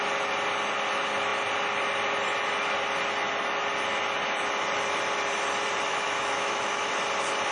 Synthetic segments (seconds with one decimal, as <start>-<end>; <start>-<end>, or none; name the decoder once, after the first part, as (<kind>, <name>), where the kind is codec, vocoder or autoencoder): 5.9-6.9 (autoencoder, DAC-VAE)